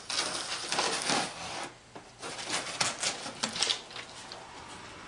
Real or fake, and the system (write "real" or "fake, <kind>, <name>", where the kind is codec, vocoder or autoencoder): real